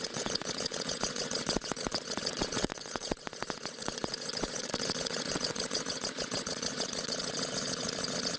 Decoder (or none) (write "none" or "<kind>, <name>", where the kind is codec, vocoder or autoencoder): vocoder, Vocos